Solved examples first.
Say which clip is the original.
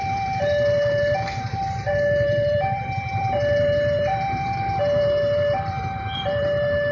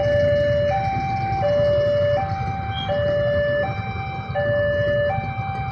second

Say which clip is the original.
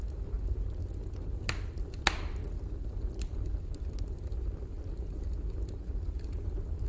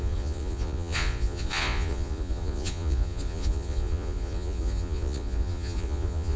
first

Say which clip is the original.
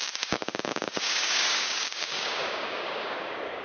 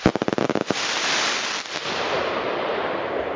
second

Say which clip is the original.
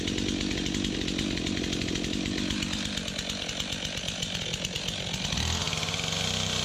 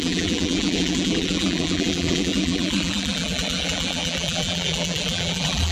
first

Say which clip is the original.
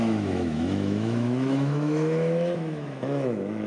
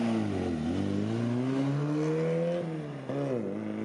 second